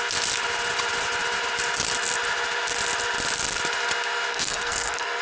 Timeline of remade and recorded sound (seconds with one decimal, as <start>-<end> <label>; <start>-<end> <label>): 0.0-4.3 recorded; 4.3-5.2 remade